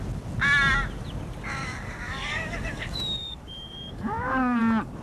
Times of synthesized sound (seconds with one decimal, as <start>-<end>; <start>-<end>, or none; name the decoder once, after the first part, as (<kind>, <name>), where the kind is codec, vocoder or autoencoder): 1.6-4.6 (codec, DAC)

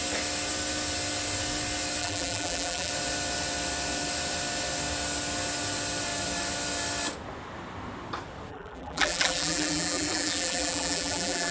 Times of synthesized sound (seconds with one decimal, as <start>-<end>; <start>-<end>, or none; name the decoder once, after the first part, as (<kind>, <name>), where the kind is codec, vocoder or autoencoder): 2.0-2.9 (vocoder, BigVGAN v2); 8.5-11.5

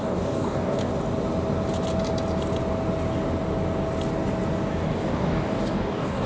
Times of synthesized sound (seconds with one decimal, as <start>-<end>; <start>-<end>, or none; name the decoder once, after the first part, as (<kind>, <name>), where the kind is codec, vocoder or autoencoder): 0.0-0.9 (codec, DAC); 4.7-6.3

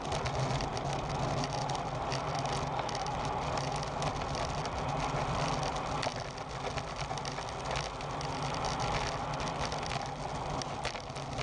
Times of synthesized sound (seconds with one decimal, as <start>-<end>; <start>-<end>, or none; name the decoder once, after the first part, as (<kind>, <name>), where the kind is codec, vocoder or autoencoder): none

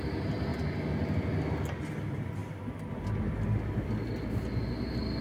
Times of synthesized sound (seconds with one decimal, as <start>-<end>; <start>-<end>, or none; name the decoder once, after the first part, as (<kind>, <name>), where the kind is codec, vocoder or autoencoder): none

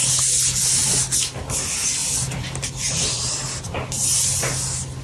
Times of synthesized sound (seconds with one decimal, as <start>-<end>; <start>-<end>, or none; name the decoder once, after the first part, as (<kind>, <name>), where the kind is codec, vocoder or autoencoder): 2.0-3.4 (vocoder, BigVGAN v2)

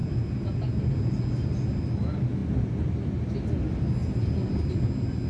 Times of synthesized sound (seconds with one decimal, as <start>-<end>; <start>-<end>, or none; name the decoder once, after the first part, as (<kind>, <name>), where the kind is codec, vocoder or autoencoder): none

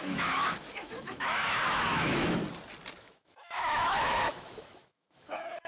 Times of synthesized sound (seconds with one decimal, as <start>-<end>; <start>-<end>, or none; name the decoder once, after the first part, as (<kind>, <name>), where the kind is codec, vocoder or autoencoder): 0.0-2.4 (autoencoder, DAC-VAE); 3.0-5.7